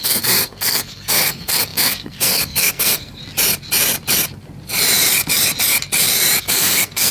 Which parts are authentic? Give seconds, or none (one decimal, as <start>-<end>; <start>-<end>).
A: 3.2-6.4